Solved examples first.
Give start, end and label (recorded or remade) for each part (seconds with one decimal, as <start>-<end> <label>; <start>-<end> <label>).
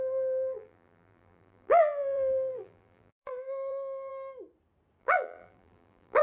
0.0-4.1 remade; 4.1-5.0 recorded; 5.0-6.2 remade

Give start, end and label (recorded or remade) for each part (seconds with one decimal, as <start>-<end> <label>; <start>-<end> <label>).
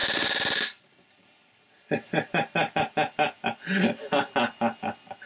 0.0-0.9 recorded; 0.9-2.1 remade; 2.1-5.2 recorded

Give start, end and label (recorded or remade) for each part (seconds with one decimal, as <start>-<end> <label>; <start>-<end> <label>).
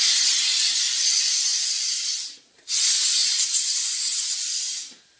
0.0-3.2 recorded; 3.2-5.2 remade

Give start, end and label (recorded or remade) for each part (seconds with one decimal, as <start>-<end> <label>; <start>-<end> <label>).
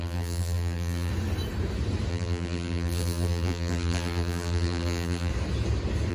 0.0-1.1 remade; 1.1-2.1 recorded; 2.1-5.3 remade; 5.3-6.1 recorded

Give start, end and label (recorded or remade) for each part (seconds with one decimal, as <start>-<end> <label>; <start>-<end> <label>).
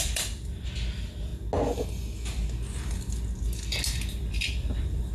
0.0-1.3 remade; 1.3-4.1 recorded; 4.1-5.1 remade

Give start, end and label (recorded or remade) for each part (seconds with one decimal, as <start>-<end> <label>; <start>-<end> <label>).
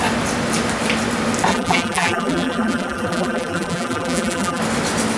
0.0-1.5 recorded; 1.5-4.6 remade; 4.6-5.2 recorded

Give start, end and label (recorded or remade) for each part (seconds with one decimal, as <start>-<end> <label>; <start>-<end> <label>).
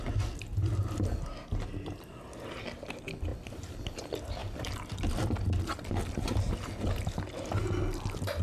0.0-3.3 recorded; 3.3-4.0 remade; 4.0-4.4 recorded; 4.4-6.5 remade; 6.5-8.4 recorded